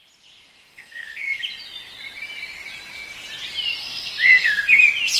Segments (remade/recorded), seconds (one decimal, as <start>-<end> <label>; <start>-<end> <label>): 0.0-0.7 recorded; 0.7-1.4 remade; 1.4-3.8 recorded; 3.8-4.8 remade; 4.8-5.2 recorded

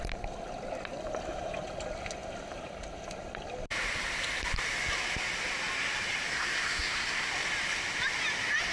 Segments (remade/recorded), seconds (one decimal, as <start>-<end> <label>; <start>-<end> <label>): 0.0-6.3 recorded; 6.3-7.3 remade; 7.3-8.7 recorded

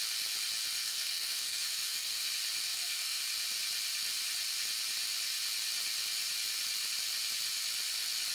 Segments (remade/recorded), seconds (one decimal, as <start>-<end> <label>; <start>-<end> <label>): 0.0-0.8 recorded; 0.8-2.3 remade; 2.3-2.7 recorded; 2.7-3.2 remade; 3.2-8.3 recorded